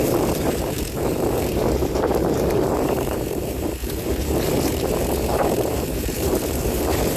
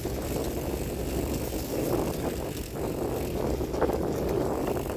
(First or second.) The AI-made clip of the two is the first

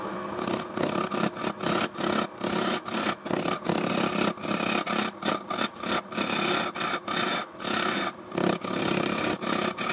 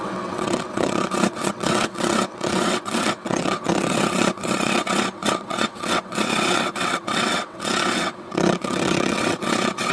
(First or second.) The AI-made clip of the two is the second